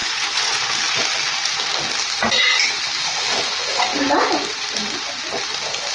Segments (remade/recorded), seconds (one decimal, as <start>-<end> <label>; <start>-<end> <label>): 0.0-0.6 remade; 0.6-5.9 recorded